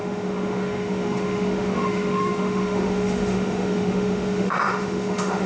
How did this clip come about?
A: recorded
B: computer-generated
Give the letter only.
B